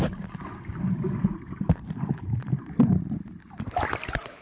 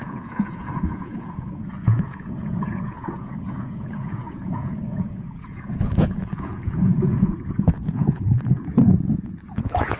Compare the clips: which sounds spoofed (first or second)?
second